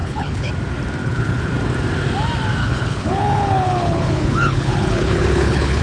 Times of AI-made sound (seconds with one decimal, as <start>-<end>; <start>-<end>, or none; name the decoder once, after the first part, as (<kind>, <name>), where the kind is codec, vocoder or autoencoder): 0.0-0.5 (codec, HILCodec); 1.0-1.5; 2.6-5.8